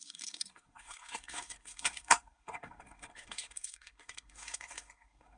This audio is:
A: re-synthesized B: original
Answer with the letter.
A